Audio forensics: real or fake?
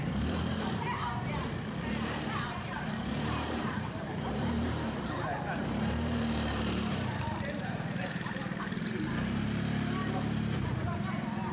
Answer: fake